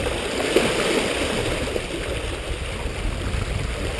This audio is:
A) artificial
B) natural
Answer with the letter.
B